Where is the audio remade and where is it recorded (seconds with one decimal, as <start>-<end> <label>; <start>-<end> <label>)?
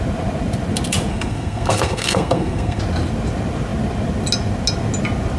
0.0-1.1 recorded; 1.1-2.8 remade; 2.8-5.4 recorded